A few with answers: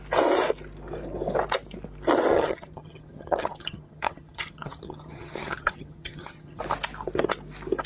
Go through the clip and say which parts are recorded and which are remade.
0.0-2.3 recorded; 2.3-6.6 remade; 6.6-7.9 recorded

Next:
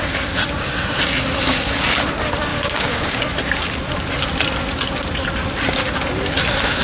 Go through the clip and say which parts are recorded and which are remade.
0.0-2.5 recorded; 2.5-3.2 remade; 3.2-6.8 recorded